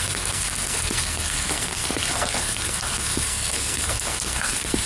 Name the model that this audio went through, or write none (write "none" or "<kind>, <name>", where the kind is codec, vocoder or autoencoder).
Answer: codec, SNAC